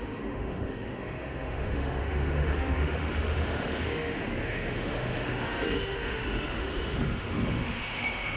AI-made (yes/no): yes